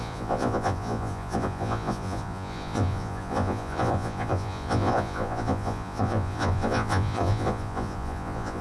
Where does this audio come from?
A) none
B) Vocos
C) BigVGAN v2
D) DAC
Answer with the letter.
B